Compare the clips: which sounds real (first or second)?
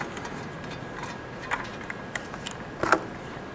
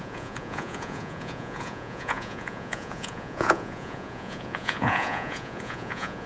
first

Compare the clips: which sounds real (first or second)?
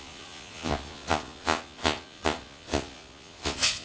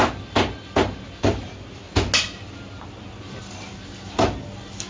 second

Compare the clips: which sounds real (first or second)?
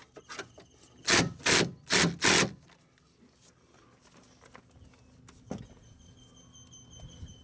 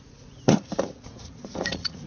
first